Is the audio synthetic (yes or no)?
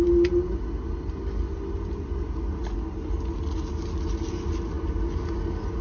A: no